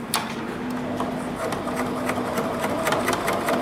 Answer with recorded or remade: recorded